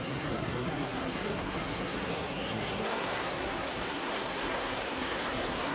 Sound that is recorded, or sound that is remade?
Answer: remade